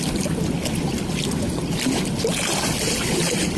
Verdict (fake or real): real